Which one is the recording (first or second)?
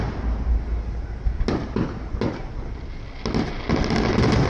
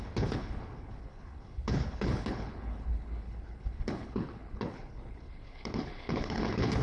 first